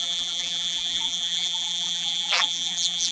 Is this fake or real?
fake